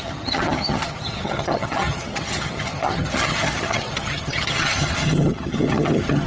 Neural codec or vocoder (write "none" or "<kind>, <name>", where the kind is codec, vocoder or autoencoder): vocoder, HiFi-GAN